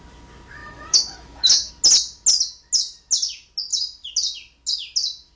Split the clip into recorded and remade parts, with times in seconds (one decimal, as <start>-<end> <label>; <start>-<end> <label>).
0.0-0.6 recorded; 0.6-1.7 remade; 1.7-5.4 recorded